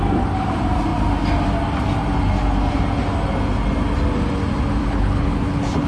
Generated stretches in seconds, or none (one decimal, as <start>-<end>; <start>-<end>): 4.8-5.9